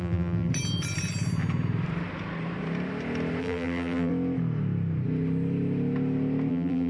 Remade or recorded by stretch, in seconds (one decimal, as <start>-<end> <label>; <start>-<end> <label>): 0.0-0.5 remade; 0.5-3.4 recorded; 3.4-4.1 remade; 4.1-6.5 recorded; 6.5-6.9 remade

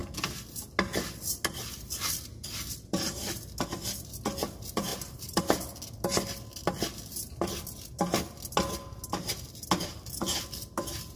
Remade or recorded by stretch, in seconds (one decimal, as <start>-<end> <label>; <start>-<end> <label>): 0.0-4.9 recorded; 4.9-5.4 remade; 5.4-11.2 recorded

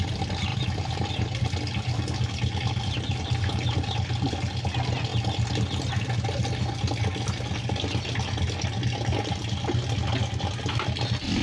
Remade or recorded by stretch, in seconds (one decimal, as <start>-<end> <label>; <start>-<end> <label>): 0.0-0.5 recorded; 0.5-1.1 remade; 1.1-11.4 recorded

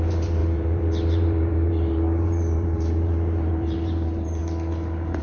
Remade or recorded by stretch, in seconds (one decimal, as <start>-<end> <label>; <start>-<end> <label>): 0.0-4.4 remade; 4.4-5.2 recorded

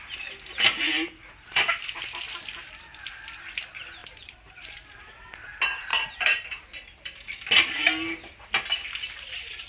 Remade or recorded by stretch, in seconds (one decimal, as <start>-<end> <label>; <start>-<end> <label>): 0.0-4.0 recorded; 4.0-5.5 remade; 5.5-5.9 recorded; 5.9-6.6 remade; 6.6-9.7 recorded

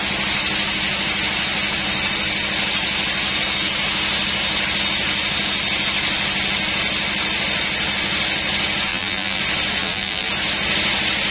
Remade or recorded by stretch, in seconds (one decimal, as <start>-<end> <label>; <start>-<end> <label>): 0.0-8.9 recorded; 8.9-9.4 remade; 9.4-9.8 recorded; 9.8-10.3 remade; 10.3-11.3 recorded

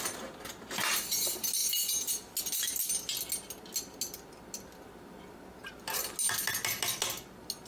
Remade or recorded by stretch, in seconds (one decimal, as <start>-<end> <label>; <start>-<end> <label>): 0.0-7.7 recorded

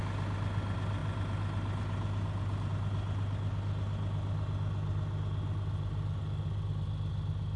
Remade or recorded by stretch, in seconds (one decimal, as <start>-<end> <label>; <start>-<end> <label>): 0.0-1.0 recorded; 1.0-2.7 remade; 2.7-7.6 recorded